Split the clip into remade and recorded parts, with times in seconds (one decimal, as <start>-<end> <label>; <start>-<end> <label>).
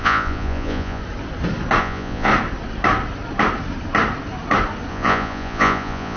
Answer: 0.0-1.0 remade; 1.0-1.8 recorded; 1.8-2.3 remade; 2.3-4.9 recorded; 4.9-6.2 remade